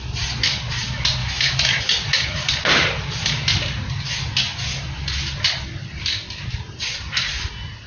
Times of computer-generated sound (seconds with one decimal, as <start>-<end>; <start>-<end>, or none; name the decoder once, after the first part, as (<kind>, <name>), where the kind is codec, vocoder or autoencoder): 1.2-1.8 (autoencoder, DAC-VAE)